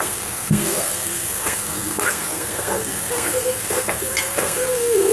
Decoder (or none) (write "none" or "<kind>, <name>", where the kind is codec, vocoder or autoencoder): codec, SNAC